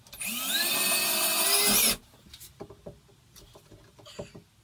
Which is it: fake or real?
real